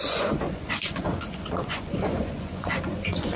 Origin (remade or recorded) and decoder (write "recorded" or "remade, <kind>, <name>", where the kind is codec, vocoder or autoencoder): remade, vocoder, Vocos